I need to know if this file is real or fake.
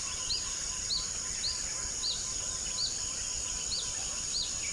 real